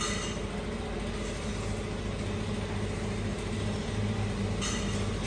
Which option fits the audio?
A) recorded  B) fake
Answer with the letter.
A